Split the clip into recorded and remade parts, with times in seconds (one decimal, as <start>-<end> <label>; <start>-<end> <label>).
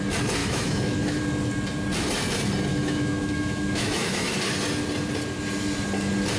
0.0-0.4 recorded; 0.4-1.2 remade; 1.2-2.7 recorded; 2.7-4.4 remade; 4.4-6.4 recorded